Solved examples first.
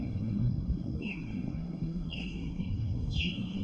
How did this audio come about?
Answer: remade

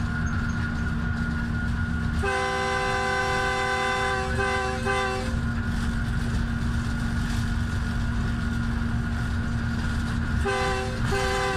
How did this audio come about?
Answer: recorded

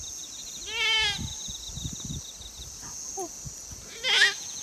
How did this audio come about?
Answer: recorded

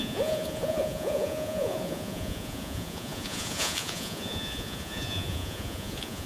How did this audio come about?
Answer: remade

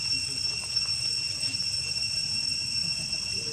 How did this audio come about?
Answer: recorded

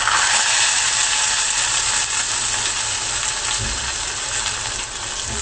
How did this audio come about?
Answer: recorded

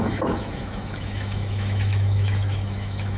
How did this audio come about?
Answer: remade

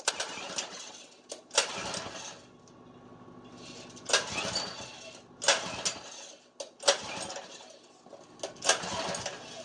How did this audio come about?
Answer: recorded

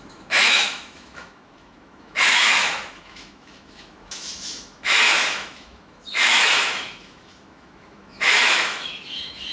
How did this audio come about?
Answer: remade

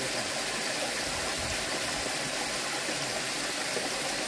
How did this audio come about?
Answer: recorded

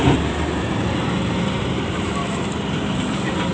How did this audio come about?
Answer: remade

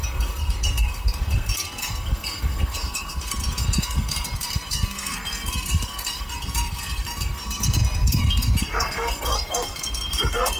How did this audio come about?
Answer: remade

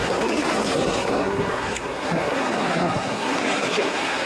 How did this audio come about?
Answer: remade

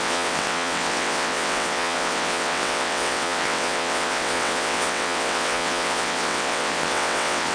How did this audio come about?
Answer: remade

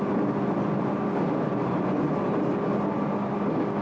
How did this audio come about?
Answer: recorded